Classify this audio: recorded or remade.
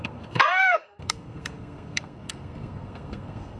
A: remade